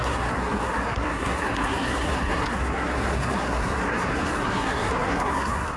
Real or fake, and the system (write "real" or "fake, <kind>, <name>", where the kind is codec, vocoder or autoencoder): fake, codec, SNAC